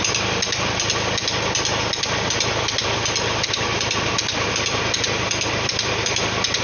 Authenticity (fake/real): real